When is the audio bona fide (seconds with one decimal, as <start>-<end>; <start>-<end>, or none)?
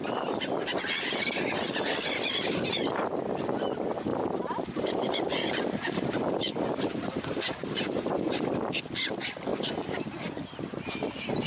0.0-4.1; 8.8-9.5; 10.6-11.5